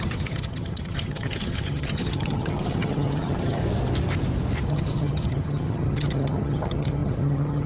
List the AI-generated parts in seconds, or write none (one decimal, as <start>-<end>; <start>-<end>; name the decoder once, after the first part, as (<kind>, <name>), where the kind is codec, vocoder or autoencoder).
0.0-3.6 (vocoder, HiFi-GAN); 4.7-7.7